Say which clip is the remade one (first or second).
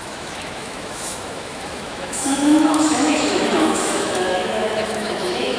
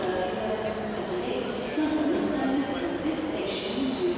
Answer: first